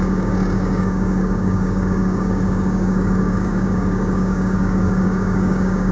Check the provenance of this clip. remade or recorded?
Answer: remade